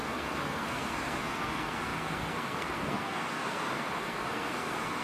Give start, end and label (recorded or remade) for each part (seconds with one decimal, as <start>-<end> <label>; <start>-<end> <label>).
0.0-5.0 remade